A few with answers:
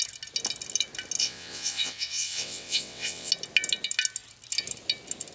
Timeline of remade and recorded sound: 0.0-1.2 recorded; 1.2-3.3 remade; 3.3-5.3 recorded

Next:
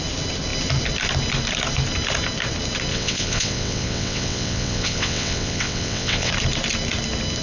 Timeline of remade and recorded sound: 0.0-2.9 recorded; 2.9-6.3 remade; 6.3-7.4 recorded

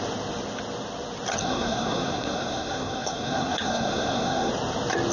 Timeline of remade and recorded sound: 0.0-1.4 recorded; 1.4-4.5 remade; 4.5-5.1 recorded

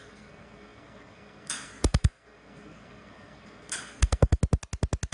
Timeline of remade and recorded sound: 0.0-4.4 remade; 4.4-5.1 recorded

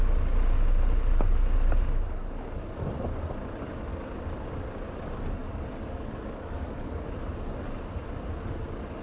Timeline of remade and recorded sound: 0.0-5.4 recorded; 5.4-7.1 remade; 7.1-9.0 recorded

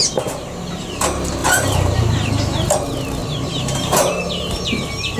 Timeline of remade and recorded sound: 0.0-1.4 recorded; 1.4-2.3 remade; 2.3-3.2 recorded; 3.2-4.2 remade; 4.2-5.2 recorded

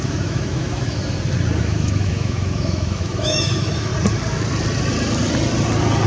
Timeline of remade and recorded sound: 0.0-1.0 remade; 1.0-1.6 recorded; 1.6-3.9 remade; 3.9-6.1 recorded